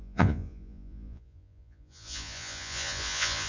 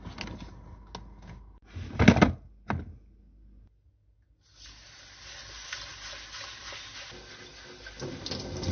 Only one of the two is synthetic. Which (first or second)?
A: first